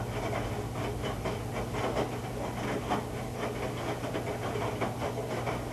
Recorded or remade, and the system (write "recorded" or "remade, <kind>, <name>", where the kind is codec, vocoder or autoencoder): recorded